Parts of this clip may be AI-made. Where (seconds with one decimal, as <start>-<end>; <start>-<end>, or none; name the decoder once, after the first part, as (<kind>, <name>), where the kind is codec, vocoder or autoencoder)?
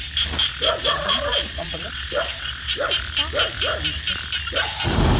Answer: 0.4-2.8 (vocoder, Vocos)